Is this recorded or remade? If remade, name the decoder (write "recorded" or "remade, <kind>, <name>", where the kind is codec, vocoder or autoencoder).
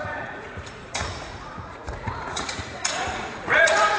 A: remade, vocoder, Vocos